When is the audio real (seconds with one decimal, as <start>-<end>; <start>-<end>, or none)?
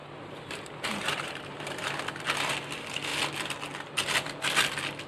2.0-5.1